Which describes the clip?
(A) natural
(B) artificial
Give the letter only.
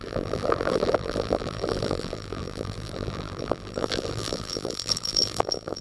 B